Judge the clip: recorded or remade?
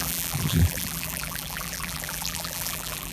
remade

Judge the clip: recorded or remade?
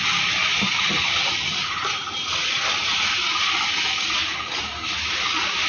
recorded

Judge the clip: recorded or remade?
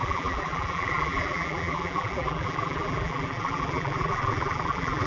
remade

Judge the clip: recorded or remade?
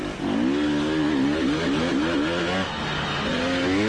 recorded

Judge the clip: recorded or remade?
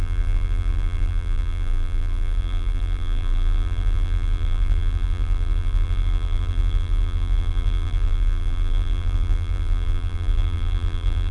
remade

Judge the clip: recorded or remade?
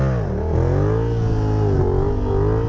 recorded